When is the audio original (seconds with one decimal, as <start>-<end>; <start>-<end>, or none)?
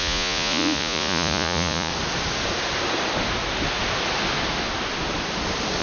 1.9-5.8